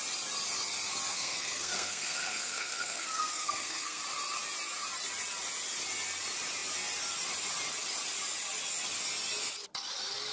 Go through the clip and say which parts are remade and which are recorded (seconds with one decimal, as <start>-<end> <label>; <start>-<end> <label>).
0.0-1.1 recorded; 1.1-4.0 remade; 4.0-10.3 recorded